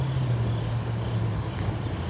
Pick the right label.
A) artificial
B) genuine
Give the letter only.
B